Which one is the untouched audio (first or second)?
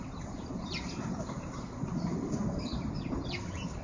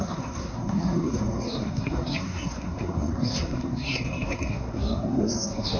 first